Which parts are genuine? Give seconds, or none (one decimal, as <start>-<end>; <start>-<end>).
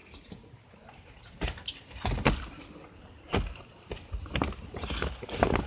0.0-5.7